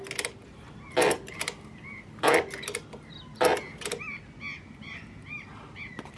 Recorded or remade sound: recorded